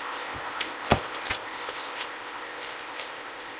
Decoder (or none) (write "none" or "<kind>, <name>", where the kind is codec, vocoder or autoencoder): codec, ZipCodec